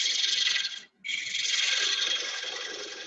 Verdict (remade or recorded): recorded